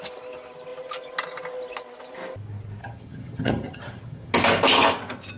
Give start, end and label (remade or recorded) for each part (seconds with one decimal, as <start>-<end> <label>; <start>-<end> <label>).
0.0-2.8 recorded; 2.8-4.3 remade; 4.3-5.4 recorded